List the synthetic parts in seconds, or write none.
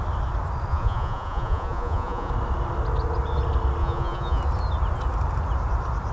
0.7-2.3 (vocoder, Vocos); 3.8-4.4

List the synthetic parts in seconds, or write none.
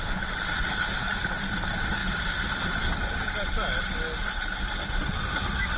none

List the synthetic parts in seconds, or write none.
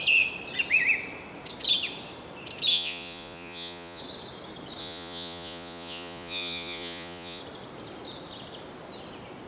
2.7-4.0 (vocoder, Vocos); 4.8-7.4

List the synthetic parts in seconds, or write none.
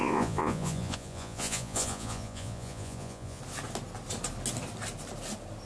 0.0-3.4 (vocoder, Vocos)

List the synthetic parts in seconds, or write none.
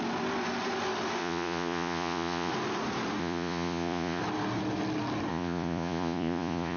1.2-2.5 (vocoder, Vocos); 3.2-4.2; 5.3-6.8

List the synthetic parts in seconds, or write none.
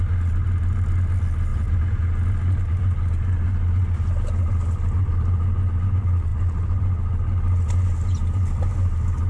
1.5-2.1 (vocoder, Vocos)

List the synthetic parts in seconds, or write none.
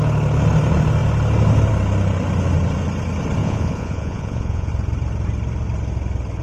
3.4-4.7 (vocoder, Vocos)